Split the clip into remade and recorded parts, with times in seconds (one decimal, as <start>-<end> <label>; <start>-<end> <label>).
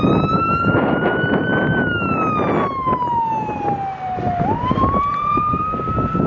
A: 0.0-1.5 remade; 1.5-4.7 recorded; 4.7-6.3 remade